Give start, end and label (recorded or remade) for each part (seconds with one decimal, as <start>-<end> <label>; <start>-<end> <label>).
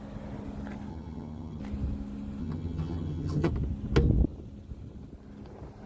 0.0-0.9 recorded; 0.9-1.6 remade; 1.6-2.4 recorded; 2.4-3.5 remade; 3.5-5.9 recorded